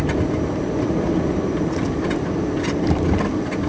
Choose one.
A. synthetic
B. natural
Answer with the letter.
B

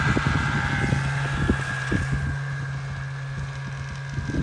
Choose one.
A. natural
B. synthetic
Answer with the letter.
A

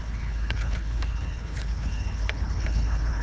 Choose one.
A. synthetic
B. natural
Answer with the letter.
A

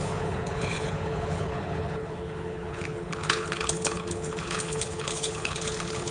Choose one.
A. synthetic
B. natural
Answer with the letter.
A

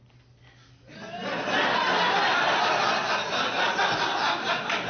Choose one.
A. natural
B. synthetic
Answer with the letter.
A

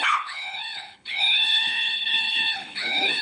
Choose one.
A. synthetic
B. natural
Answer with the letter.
A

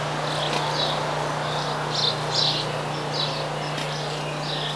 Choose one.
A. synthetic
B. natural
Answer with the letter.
B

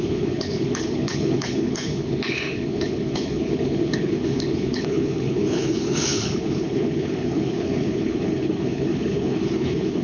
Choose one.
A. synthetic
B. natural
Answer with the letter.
A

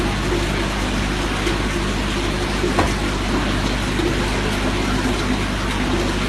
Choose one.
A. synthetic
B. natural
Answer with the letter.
B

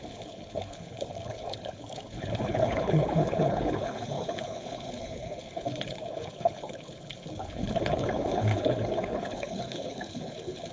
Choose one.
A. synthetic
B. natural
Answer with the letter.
A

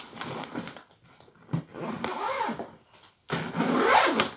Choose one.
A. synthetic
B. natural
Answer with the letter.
B